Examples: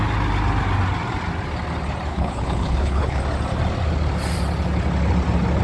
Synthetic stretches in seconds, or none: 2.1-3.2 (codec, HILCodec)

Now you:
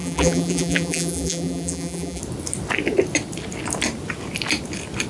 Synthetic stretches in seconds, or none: 0.0-2.2 (vocoder, BigVGAN v2)

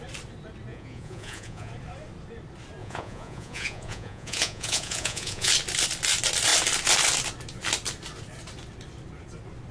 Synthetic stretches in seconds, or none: 0.7-1.7 (vocoder, Vocos); 2.8-5.5